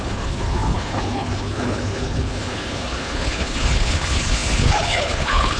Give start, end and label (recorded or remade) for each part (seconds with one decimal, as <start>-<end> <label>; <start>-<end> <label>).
0.0-5.6 remade